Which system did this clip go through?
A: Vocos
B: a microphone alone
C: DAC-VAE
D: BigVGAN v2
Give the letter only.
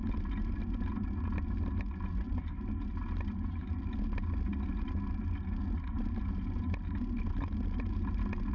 B